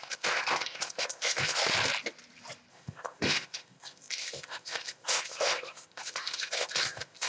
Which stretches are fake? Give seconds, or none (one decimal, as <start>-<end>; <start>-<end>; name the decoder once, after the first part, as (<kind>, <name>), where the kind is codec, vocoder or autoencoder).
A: 0.0-1.6 (codec, ZipCodec); 2.7-7.3